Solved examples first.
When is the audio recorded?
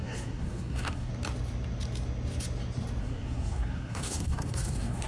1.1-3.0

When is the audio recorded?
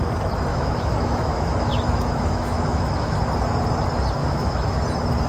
0.0-0.5; 3.2-4.2; 4.8-5.3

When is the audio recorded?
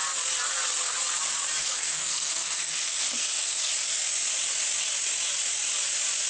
0.0-1.6; 3.7-6.3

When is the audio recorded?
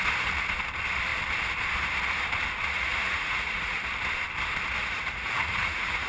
0.0-2.7; 3.8-4.8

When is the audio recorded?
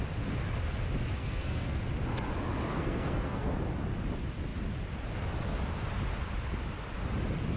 0.0-1.2; 1.8-2.7; 3.5-7.6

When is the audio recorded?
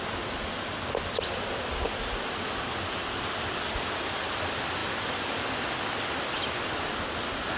0.0-7.6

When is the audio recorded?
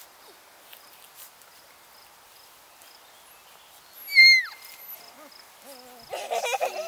0.0-6.9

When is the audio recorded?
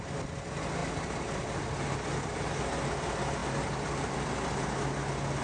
0.0-5.4